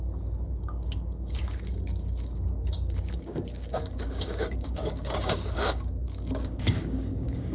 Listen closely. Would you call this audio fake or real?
fake